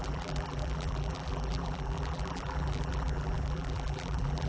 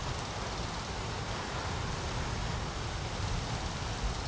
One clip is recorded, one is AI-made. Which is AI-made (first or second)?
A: first